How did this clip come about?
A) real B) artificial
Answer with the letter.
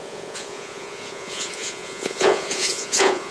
B